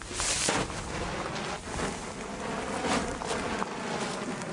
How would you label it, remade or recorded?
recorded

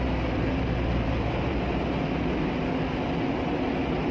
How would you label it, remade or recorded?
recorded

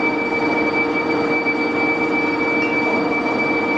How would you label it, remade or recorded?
recorded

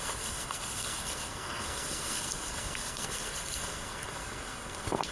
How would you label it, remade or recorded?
remade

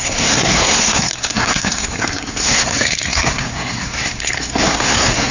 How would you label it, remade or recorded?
remade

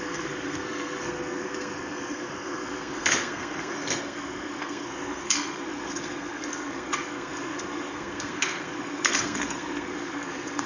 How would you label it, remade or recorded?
remade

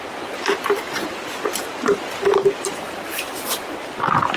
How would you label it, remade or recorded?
recorded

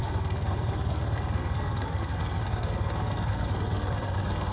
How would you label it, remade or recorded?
remade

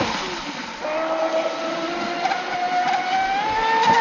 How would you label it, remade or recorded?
recorded